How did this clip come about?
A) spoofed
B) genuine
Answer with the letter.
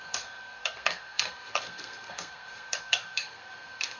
A